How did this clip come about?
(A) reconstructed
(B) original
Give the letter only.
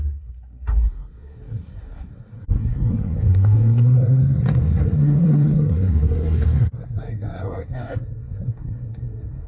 A